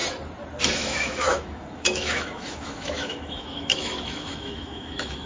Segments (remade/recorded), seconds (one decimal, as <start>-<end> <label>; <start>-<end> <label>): 0.0-0.7 recorded; 0.7-5.3 remade